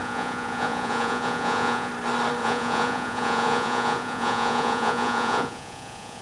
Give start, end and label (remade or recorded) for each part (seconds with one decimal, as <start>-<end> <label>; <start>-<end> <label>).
0.0-1.9 remade; 1.9-2.4 recorded; 2.4-6.2 remade